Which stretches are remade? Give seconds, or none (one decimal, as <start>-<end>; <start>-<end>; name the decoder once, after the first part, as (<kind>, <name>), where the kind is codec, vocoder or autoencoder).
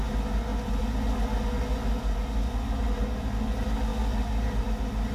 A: none